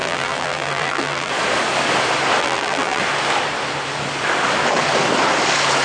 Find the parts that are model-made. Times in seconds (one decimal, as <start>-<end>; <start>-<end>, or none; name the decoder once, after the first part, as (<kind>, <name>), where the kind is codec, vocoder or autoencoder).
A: 0.0-1.3 (vocoder, BigVGAN v2); 2.4-3.0